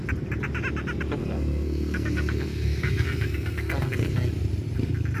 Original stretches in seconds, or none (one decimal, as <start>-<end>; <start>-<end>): 0.0-1.2; 4.3-5.2